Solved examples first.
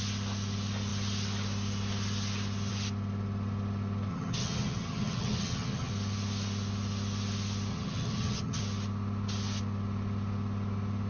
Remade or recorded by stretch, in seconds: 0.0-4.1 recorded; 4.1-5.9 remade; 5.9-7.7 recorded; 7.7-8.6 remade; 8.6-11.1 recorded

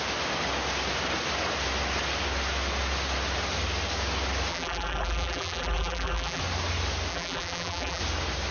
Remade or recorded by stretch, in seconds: 0.0-4.5 recorded; 4.5-6.4 remade; 6.4-7.1 recorded; 7.1-8.0 remade; 8.0-8.5 recorded

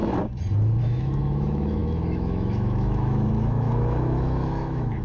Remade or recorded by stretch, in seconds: 0.0-0.8 recorded; 0.8-5.0 remade